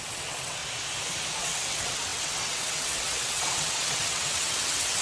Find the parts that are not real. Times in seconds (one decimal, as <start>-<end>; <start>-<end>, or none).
0.0-0.6; 1.4-5.0